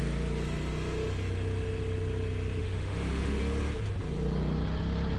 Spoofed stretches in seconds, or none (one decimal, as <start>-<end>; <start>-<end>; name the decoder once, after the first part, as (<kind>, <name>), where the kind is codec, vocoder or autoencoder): 2.6-3.4 (autoencoder, DAC-VAE)